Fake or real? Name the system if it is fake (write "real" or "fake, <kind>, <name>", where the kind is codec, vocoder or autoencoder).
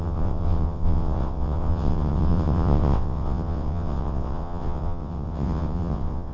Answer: fake, vocoder, WaveNeXt